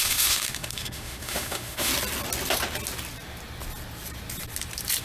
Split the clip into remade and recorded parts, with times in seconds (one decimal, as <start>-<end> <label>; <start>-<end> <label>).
0.0-1.9 remade; 1.9-5.0 recorded